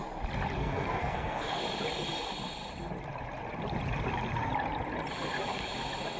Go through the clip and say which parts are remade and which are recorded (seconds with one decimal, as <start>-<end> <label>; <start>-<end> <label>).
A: 0.0-0.6 recorded; 0.6-1.6 remade; 1.6-6.2 recorded